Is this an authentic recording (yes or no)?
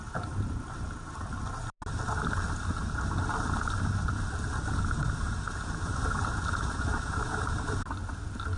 yes